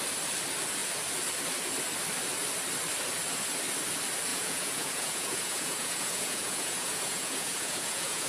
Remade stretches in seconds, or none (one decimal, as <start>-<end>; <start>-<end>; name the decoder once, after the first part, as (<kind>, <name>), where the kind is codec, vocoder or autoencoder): 4.3-8.3 (vocoder, Vocos)